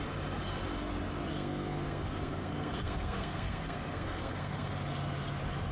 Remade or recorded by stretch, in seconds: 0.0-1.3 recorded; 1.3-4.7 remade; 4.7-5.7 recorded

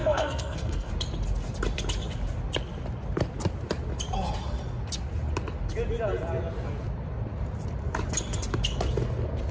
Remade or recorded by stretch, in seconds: 0.0-0.9 remade; 0.9-9.5 recorded

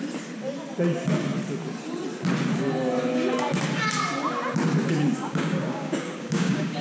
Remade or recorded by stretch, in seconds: 0.0-5.2 recorded; 5.2-6.8 remade

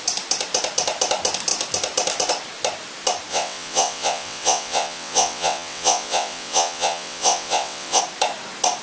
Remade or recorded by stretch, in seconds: 0.0-3.3 recorded; 3.3-8.0 remade; 8.0-8.8 recorded

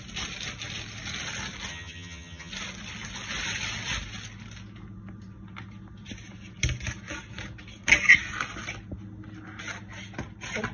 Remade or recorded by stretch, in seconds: 0.0-1.7 recorded; 1.7-2.5 remade; 2.5-10.7 recorded

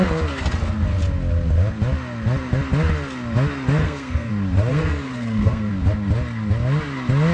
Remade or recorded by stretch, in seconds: 0.0-3.8 recorded; 3.8-4.3 remade; 4.3-4.7 recorded; 4.7-5.7 remade; 5.7-7.3 recorded

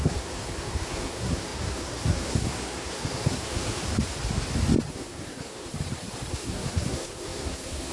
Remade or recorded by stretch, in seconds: 0.0-3.8 remade; 3.8-4.9 recorded; 4.9-5.7 remade; 5.7-6.3 recorded; 6.3-7.9 remade

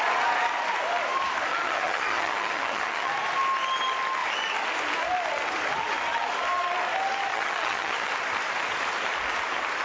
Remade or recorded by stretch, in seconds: 0.0-1.5 recorded; 1.5-3.1 remade; 3.1-7.3 recorded; 7.3-8.1 remade; 8.1-9.8 recorded